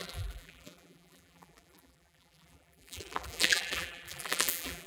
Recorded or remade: remade